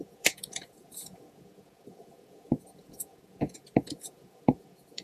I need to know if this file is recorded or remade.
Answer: remade